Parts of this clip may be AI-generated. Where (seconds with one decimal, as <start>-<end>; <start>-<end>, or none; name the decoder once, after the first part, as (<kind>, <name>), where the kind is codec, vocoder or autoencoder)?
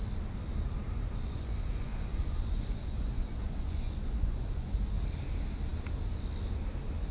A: 1.1-4.8 (vocoder, Vocos)